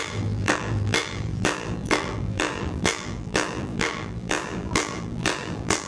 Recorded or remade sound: remade